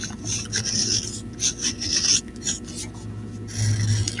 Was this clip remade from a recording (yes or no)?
no